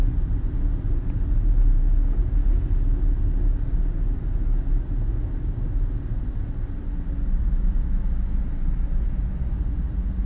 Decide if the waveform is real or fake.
real